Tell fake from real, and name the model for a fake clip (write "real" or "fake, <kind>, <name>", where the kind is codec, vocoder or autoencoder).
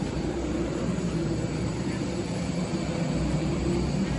fake, vocoder, BigVGAN v2